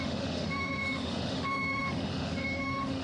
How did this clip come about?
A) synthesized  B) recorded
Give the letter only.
A